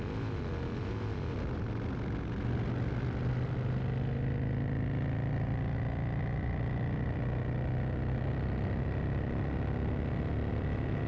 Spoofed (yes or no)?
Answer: no